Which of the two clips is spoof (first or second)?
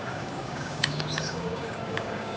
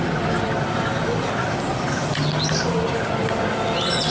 first